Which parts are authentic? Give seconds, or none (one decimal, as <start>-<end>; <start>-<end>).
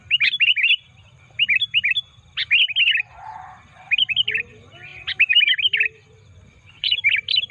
0.0-6.5; 7.0-7.5